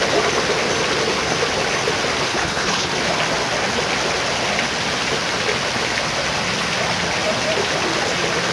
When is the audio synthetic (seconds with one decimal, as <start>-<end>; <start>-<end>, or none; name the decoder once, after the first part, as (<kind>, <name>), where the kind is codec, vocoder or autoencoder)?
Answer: 2.3-2.9 (codec, HILCodec)